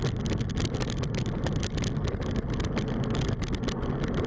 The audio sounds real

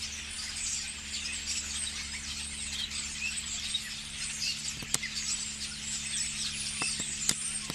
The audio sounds real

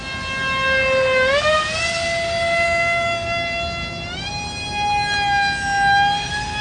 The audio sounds real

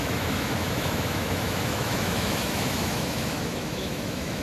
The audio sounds fake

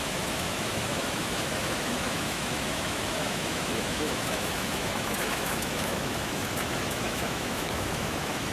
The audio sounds fake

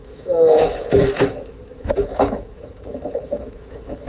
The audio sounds fake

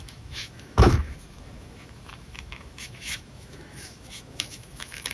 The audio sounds fake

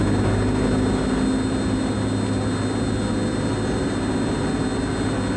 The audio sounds real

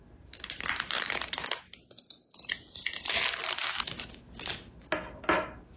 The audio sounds real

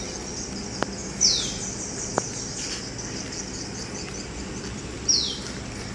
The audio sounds real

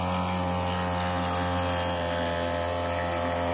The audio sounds real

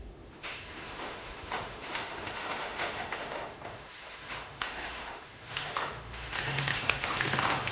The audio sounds fake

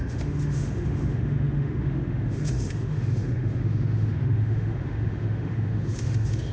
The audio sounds fake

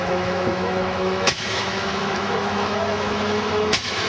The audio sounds fake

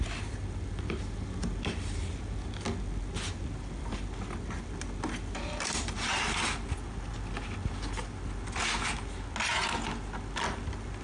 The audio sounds real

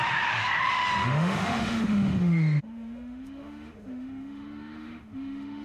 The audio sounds fake